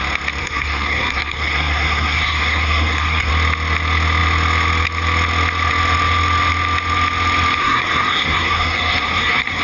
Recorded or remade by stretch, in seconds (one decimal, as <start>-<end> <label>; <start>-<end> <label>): 0.0-0.4 recorded; 0.4-3.3 remade; 3.3-7.6 recorded; 7.6-9.6 remade

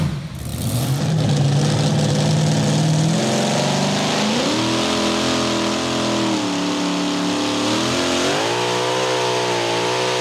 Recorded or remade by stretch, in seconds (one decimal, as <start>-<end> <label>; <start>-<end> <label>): 0.0-10.2 recorded

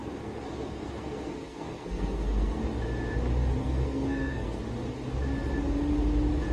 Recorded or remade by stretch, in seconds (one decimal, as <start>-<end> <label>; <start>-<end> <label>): 0.0-2.6 remade; 2.6-3.6 recorded; 3.6-4.6 remade; 4.6-6.5 recorded

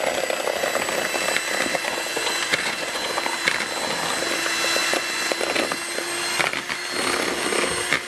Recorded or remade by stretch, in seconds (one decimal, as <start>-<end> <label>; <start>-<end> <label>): 0.0-1.7 recorded; 1.7-3.1 remade; 3.1-4.8 recorded; 4.8-5.3 remade; 5.3-8.1 recorded

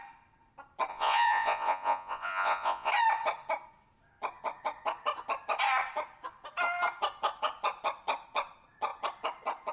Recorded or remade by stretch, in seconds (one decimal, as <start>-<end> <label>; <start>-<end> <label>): 0.0-0.9 recorded; 0.9-2.9 remade; 2.9-9.7 recorded

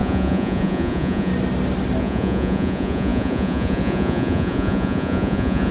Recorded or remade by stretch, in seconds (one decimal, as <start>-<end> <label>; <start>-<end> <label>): 0.0-1.3 remade; 1.3-2.0 recorded; 2.0-5.7 remade

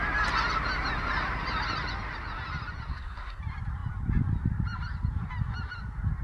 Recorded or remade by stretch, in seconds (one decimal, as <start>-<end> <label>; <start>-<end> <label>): 0.0-2.9 recorded; 2.9-3.4 remade; 3.4-6.2 recorded